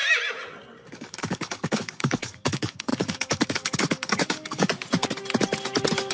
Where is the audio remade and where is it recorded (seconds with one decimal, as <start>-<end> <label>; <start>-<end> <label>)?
0.0-0.9 recorded; 0.9-4.7 remade; 4.7-6.1 recorded